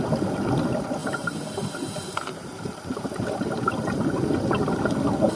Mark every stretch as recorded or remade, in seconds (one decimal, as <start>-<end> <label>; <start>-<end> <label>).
0.0-1.0 recorded; 1.0-4.2 remade; 4.2-5.4 recorded